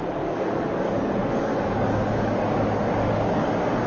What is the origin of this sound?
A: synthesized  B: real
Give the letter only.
A